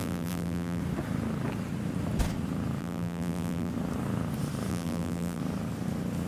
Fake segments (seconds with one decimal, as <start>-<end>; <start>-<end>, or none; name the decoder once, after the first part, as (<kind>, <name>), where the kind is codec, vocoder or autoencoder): 0.0-0.8 (vocoder, BigVGAN v2); 2.8-3.7; 4.7-5.4